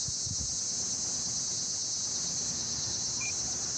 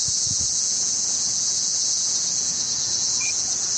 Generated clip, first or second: second